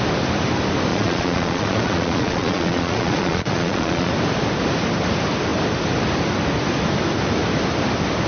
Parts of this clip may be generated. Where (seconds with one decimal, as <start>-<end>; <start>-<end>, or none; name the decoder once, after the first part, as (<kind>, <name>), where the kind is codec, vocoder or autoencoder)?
0.9-4.1 (vocoder, Vocos)